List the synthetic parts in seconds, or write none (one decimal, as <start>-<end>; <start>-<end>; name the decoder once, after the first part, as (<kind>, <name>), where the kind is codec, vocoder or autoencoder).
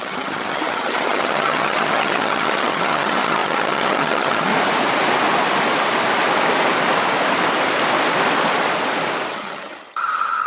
0.0-4.5 (vocoder, HiFi-GAN); 9.3-10.5